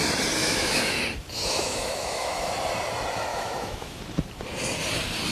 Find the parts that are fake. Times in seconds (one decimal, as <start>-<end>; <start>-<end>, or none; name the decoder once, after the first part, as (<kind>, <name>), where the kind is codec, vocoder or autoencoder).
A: 0.4-1.0 (autoencoder, DAC-VAE); 1.4-2.5; 3.3-4.0